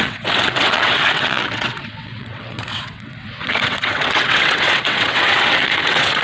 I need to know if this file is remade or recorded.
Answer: remade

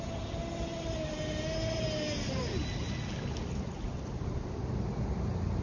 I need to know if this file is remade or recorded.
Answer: recorded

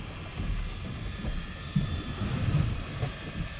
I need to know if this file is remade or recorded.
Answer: recorded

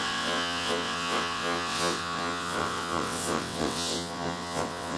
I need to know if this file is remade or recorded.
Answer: remade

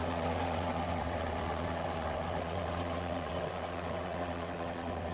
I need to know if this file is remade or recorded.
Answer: remade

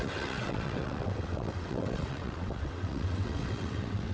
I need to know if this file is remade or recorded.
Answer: remade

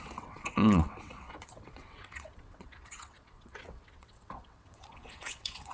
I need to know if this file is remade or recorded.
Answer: remade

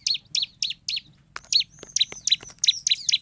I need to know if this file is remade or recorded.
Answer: recorded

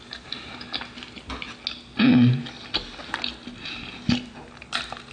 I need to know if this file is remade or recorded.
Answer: recorded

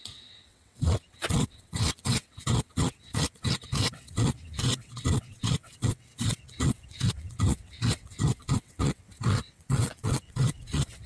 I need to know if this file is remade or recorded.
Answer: remade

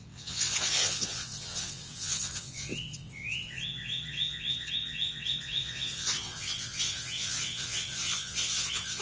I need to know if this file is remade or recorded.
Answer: remade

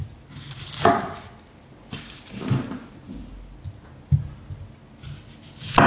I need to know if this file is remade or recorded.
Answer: recorded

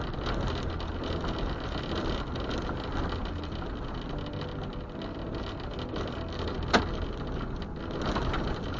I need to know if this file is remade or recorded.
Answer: recorded